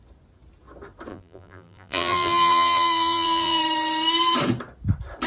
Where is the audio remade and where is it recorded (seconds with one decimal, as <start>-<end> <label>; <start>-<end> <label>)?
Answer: 0.0-1.1 recorded; 1.1-3.6 remade; 3.6-5.3 recorded